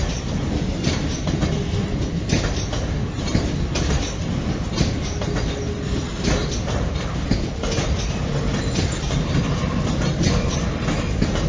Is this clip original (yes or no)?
yes